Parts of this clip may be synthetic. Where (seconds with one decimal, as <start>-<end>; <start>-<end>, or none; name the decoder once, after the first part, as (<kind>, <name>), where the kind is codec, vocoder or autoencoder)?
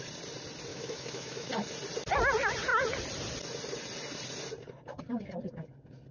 0.7-1.5 (autoencoder, DAC-VAE)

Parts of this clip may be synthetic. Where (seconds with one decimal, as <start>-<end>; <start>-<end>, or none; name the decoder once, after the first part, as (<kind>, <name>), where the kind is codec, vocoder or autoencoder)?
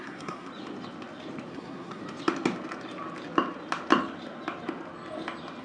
0.0-0.5 (codec, SNAC); 1.5-2.0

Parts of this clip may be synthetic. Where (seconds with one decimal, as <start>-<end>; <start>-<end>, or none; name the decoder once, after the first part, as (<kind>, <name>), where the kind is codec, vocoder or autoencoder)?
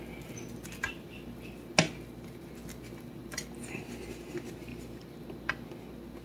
3.2-3.8 (vocoder, BigVGAN v2); 4.7-5.5